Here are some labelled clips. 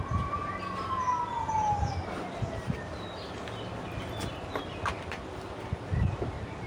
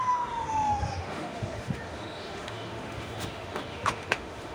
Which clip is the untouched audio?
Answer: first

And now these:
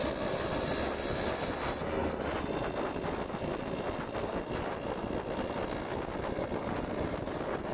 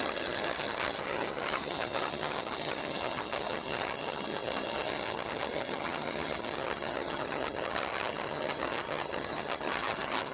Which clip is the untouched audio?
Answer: first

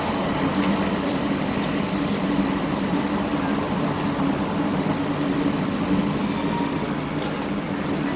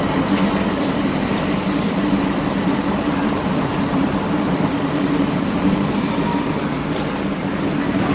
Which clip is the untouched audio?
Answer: first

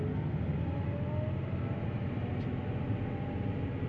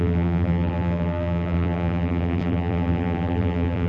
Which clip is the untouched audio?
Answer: first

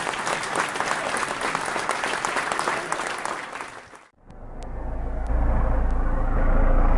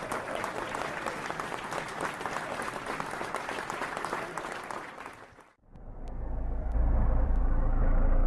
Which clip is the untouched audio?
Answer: first